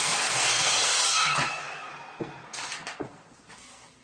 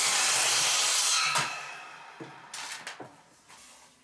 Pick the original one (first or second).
second